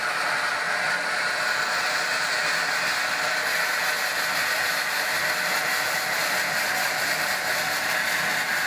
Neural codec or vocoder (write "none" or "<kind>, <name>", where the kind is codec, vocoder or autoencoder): none